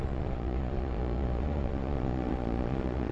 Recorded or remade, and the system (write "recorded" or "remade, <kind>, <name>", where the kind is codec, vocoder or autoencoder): remade, vocoder, Vocos